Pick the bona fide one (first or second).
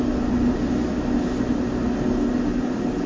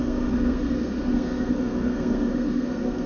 first